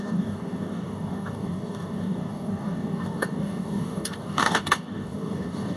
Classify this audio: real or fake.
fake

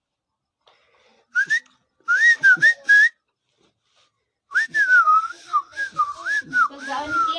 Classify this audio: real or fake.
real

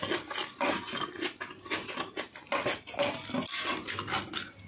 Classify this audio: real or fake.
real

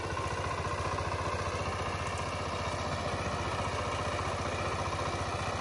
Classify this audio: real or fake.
real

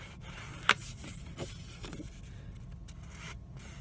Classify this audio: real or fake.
real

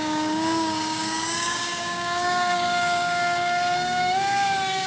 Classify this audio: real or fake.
fake